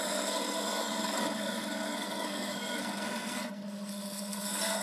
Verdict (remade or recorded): remade